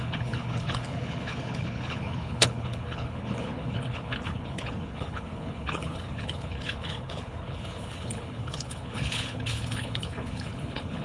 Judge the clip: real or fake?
fake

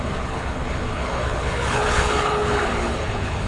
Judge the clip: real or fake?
fake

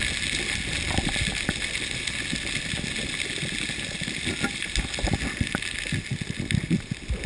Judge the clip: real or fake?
real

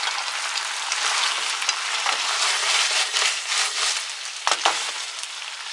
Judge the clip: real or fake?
real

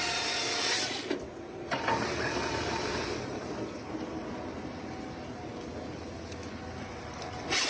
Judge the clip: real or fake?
real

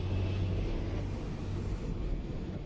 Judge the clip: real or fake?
real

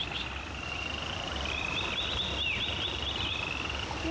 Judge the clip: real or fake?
real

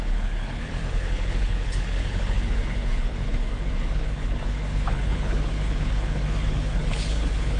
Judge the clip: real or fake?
fake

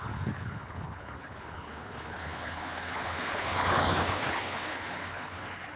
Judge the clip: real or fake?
fake